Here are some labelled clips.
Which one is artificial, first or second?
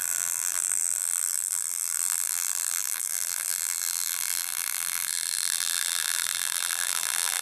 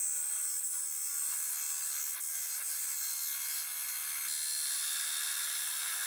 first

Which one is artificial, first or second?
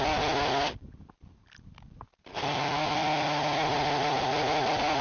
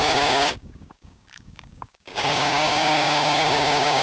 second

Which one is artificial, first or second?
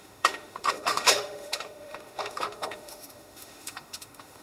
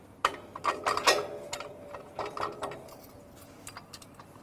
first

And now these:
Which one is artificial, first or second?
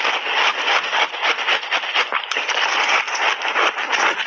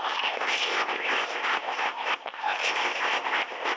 second